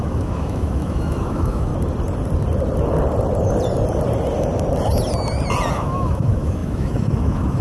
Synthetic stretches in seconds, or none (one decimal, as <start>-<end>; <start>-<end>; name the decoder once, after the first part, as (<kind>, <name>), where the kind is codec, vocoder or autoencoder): 0.0-1.7 (autoencoder, DAC-VAE); 5.7-7.6